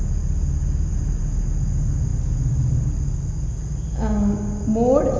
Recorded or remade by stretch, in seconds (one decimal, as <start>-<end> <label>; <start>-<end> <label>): 0.0-5.2 recorded

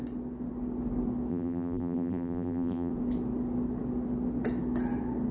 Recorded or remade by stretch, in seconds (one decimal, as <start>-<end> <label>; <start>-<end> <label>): 0.0-1.3 recorded; 1.3-2.9 remade; 2.9-5.3 recorded

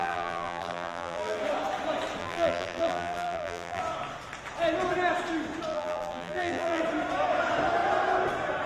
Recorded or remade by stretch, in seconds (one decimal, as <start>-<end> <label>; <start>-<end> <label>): 0.0-1.4 remade; 1.4-2.2 recorded; 2.2-3.8 remade; 3.8-5.7 recorded; 5.7-6.8 remade; 6.8-8.7 recorded